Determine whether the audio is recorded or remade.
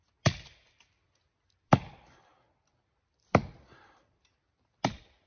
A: recorded